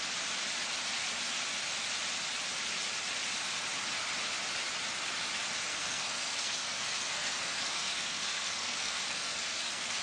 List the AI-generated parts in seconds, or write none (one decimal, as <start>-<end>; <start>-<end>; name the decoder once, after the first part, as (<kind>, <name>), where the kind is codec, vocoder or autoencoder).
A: 5.7-10.0 (codec, SNAC)